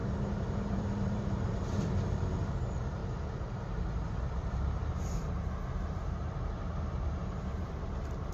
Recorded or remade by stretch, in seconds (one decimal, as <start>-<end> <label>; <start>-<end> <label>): 0.0-1.9 remade; 1.9-3.0 recorded; 3.0-8.3 remade